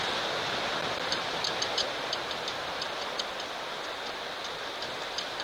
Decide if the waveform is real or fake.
fake